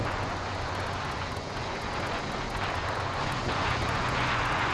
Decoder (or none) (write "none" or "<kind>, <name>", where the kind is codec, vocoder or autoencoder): vocoder, Vocos